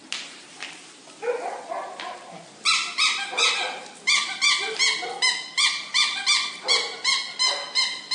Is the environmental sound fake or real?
real